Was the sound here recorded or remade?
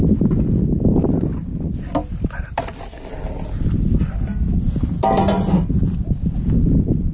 recorded